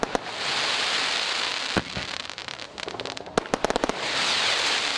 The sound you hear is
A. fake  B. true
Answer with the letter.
B